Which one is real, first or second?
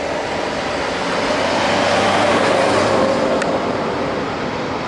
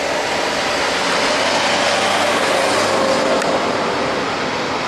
second